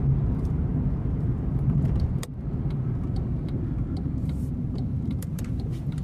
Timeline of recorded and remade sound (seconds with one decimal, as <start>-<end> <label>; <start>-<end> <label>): 0.0-2.3 remade; 2.3-3.0 recorded; 3.0-6.0 remade

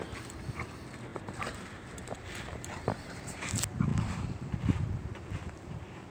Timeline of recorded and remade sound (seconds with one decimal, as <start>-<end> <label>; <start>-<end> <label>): 0.0-1.1 recorded; 1.1-3.5 remade; 3.5-3.9 recorded; 3.9-6.1 remade